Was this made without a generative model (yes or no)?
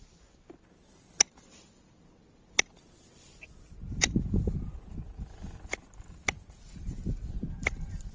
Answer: yes